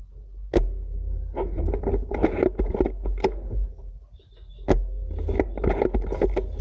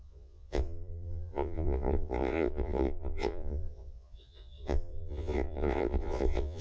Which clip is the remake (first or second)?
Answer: second